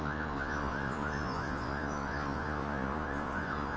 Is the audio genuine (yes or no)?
no